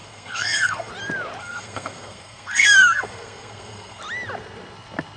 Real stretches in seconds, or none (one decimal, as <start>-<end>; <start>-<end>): 0.9-1.4; 4.0-5.2